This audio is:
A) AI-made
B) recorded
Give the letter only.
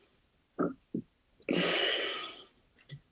B